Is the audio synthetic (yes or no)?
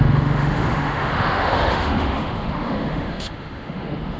yes